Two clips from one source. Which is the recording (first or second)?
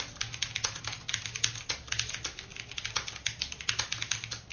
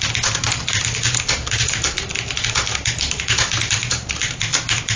first